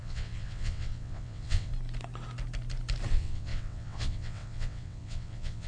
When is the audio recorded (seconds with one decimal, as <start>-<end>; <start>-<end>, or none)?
1.7-3.1